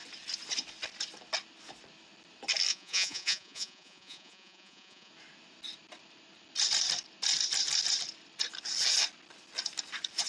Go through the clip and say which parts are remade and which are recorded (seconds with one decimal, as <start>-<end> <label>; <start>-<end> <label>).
0.0-2.7 recorded; 2.7-5.1 remade; 5.1-10.3 recorded